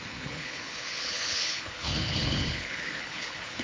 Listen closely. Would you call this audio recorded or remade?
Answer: remade